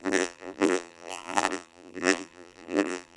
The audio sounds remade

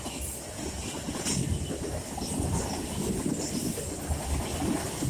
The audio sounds recorded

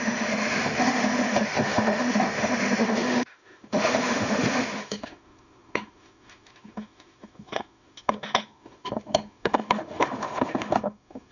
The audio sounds remade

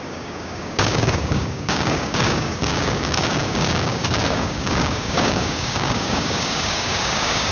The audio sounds remade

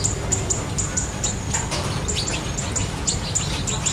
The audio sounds recorded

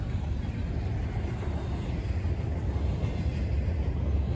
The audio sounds recorded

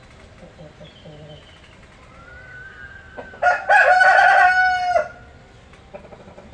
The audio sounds recorded